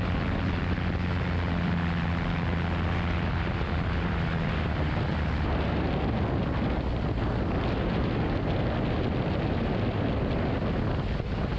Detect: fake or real real